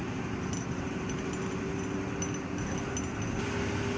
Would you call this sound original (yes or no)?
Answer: yes